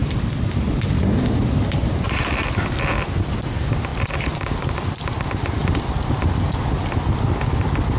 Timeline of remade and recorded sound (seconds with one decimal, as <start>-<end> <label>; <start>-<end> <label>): 0.0-1.2 remade; 1.2-1.8 recorded; 1.8-3.3 remade; 3.3-3.9 recorded; 3.9-5.1 remade; 5.1-8.0 recorded